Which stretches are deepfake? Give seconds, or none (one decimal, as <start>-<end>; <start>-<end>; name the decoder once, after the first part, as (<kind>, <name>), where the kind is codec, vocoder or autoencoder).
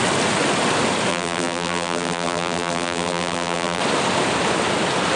1.1-3.8 (vocoder, BigVGAN v2)